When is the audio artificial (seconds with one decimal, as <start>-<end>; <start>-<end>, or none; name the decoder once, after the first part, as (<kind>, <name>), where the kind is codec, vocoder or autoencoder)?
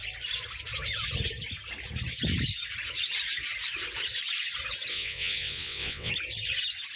4.9-6.1 (vocoder, WaveNeXt)